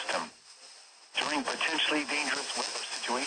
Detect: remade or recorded recorded